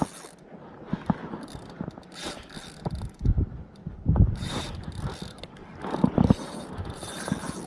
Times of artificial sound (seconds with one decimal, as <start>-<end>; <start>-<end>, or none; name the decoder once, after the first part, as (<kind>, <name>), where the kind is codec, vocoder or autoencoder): 3.8-4.5 (vocoder, BigVGAN v2); 5.6-7.2